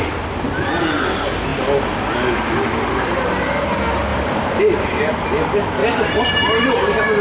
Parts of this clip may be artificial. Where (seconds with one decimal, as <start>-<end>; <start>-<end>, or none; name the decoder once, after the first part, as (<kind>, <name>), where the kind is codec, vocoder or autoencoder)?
4.1-4.6 (vocoder, BigVGAN v2); 5.8-6.7